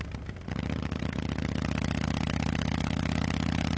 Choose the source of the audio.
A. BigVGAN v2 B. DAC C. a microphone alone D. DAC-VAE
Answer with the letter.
C